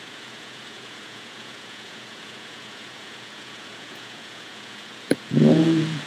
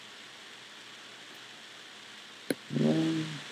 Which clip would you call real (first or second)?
second